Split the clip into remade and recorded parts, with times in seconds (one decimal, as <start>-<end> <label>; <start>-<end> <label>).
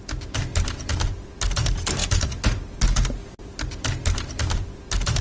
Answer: 0.0-5.2 recorded